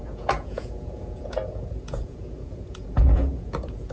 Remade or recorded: remade